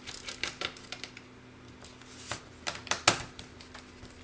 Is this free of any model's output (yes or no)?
yes